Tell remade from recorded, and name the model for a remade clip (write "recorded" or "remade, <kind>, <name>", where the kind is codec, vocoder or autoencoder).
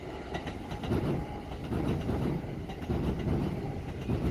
remade, vocoder, BigVGAN v2